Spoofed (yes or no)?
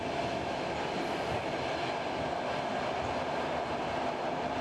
no